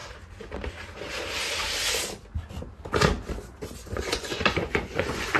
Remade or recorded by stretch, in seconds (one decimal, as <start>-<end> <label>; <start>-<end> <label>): 0.0-3.8 recorded; 3.8-5.4 remade